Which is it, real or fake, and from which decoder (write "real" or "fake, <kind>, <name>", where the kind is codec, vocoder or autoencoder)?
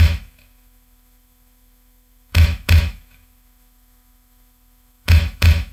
fake, autoencoder, DAC-VAE